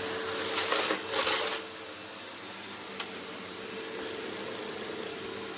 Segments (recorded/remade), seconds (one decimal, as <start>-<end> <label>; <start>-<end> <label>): 0.0-5.6 recorded